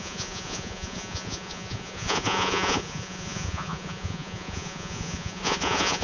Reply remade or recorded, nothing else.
remade